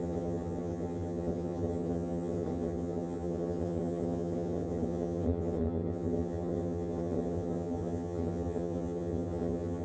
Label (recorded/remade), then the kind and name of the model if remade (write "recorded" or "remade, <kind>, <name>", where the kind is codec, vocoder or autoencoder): remade, vocoder, HiFi-GAN